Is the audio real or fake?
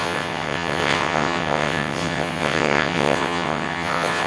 fake